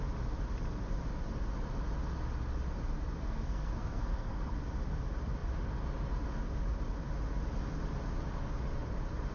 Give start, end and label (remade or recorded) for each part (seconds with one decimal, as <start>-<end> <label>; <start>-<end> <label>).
0.0-3.2 recorded; 3.2-4.5 remade; 4.5-9.3 recorded